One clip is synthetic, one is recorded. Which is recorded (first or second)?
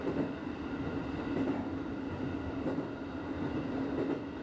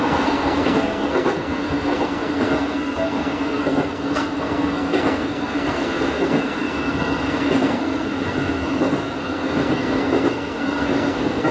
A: first